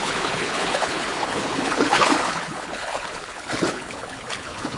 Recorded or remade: remade